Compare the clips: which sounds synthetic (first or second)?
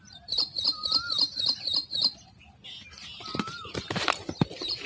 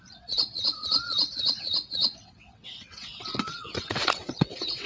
second